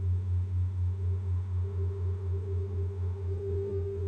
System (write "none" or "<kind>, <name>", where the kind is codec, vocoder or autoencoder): autoencoder, DAC-VAE